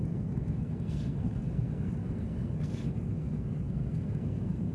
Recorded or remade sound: remade